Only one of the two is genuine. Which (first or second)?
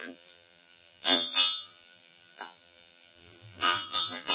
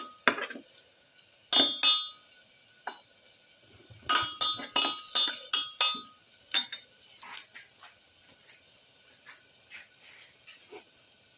second